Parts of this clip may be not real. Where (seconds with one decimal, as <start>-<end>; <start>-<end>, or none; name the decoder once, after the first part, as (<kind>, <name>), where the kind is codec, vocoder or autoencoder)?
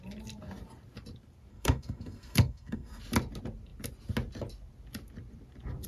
1.5-3.0 (codec, SNAC)